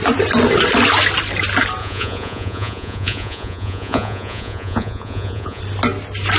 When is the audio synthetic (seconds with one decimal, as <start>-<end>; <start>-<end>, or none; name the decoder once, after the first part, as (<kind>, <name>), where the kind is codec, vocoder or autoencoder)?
1.8-5.6 (vocoder, Vocos)